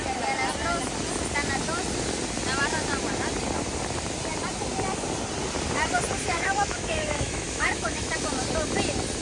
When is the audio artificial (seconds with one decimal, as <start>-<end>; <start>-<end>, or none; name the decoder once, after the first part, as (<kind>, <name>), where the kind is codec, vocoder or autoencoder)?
6.2-8.1 (autoencoder, DAC-VAE)